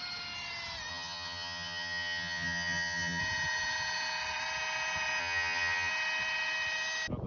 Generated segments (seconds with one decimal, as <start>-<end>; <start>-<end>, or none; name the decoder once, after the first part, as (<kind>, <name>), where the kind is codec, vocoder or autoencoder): 0.9-3.2 (vocoder, HiFi-GAN); 5.2-5.9